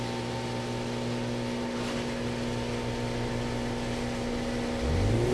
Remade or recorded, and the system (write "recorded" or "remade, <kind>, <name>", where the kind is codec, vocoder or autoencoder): recorded